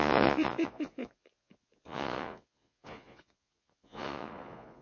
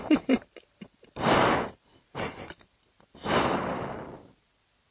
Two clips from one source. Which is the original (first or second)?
second